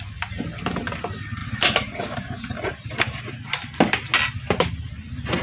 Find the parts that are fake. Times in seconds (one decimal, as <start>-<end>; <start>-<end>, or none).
1.4-3.2